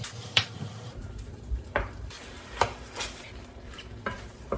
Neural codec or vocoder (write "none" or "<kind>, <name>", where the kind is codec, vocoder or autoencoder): vocoder, BigVGAN v2